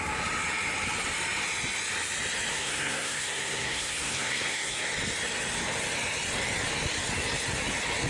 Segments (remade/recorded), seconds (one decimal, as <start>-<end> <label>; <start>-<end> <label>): 0.0-2.5 recorded; 2.5-4.9 remade; 4.9-8.1 recorded